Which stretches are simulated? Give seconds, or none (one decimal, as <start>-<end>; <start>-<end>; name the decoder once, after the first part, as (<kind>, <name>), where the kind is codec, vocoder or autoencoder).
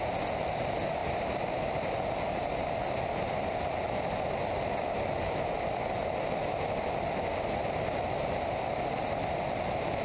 none